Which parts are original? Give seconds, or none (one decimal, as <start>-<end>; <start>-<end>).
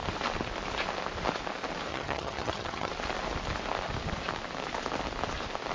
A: 0.0-1.9; 2.9-5.7